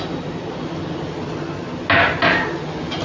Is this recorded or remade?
recorded